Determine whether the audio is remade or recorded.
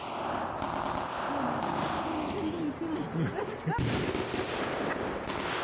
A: recorded